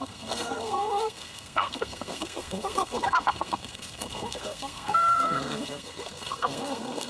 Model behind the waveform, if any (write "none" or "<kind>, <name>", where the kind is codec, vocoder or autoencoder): codec, SNAC